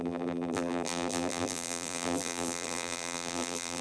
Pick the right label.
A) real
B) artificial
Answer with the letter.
B